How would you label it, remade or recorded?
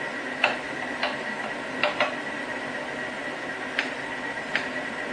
recorded